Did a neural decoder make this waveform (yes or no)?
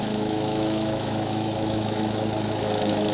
yes